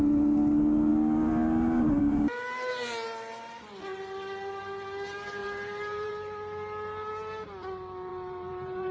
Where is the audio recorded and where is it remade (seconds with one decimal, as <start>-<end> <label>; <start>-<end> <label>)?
0.0-5.4 recorded; 5.4-6.1 remade; 6.1-8.1 recorded; 8.1-8.9 remade